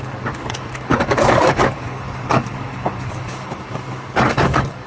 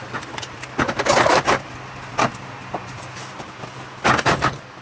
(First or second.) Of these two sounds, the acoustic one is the second